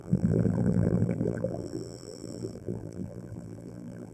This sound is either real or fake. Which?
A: fake